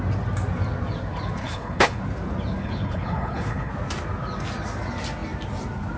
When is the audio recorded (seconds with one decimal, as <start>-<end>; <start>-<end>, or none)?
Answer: 0.0-1.4; 2.0-2.6; 3.7-6.0